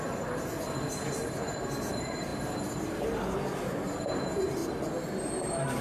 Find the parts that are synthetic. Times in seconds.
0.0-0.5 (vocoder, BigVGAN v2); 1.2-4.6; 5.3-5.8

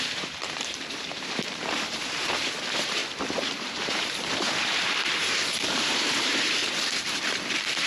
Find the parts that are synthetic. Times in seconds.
0.0-3.0 (vocoder, BigVGAN v2); 3.8-6.6; 7.1-7.9

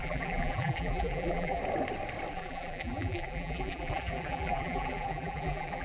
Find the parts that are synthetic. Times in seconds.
0.0-1.6 (vocoder, BigVGAN v2); 2.3-5.8

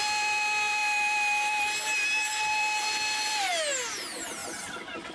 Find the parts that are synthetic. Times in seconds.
2.2-3.4 (vocoder, BigVGAN v2); 4.4-5.1

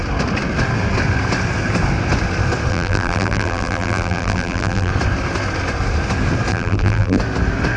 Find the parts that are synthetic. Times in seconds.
2.7-4.9 (vocoder, BigVGAN v2); 6.5-7.2

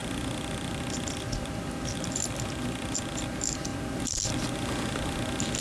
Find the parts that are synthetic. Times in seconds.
0.0-0.8 (vocoder, BigVGAN v2)

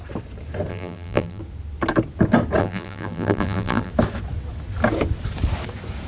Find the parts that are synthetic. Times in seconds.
0.7-1.4 (vocoder, BigVGAN v2); 2.6-3.9

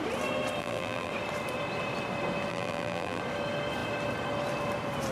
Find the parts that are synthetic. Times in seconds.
0.6-1.1 (vocoder, BigVGAN v2); 2.5-3.2